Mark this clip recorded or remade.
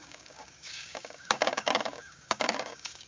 remade